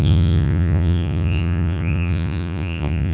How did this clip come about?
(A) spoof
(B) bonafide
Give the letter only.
A